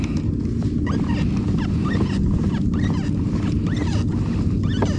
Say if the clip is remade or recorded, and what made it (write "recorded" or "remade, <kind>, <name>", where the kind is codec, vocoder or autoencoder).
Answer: recorded